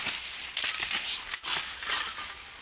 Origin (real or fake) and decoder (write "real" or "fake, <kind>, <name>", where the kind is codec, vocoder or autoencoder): real